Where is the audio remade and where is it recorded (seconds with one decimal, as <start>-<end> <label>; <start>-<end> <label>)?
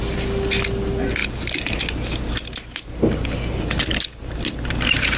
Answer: 0.0-5.2 recorded